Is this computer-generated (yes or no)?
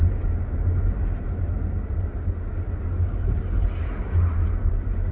no